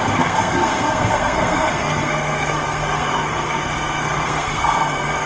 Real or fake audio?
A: fake